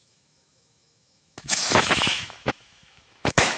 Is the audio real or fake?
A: fake